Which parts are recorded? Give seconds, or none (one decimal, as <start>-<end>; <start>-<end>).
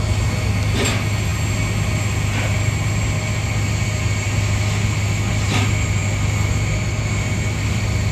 0.0-8.1